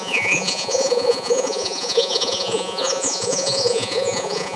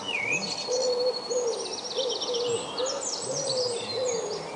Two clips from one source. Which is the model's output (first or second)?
first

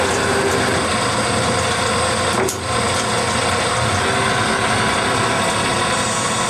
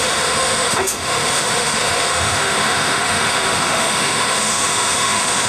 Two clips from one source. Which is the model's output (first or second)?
second